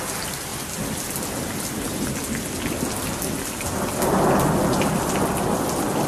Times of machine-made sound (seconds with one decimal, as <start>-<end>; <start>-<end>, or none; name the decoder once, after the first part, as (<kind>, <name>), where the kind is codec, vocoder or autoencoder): none